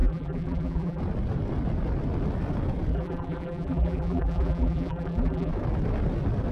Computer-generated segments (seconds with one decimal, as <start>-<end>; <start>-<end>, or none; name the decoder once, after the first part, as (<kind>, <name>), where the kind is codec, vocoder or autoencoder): 0.0-1.0 (vocoder, BigVGAN v2); 2.9-5.5